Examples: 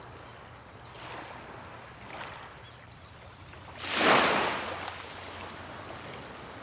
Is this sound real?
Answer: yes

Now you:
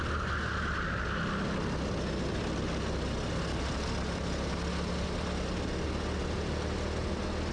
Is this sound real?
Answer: yes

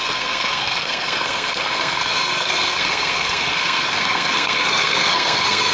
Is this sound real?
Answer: no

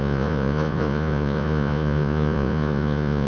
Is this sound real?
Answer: no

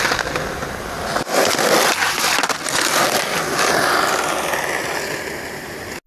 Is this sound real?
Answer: yes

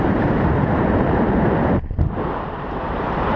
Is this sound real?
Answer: no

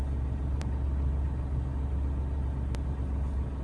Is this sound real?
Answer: yes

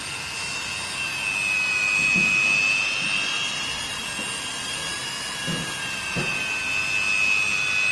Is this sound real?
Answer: yes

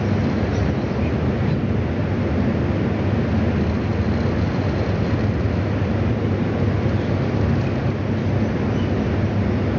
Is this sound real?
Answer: yes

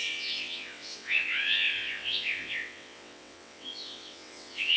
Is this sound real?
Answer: no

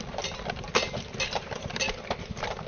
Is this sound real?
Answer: no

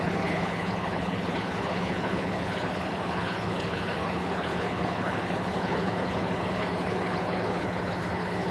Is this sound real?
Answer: no